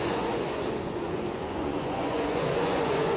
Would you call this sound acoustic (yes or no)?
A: no